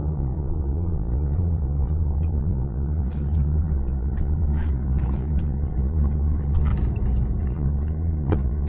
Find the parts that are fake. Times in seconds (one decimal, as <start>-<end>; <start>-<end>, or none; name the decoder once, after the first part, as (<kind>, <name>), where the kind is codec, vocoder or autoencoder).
0.0-6.7 (vocoder, Vocos); 7.4-8.7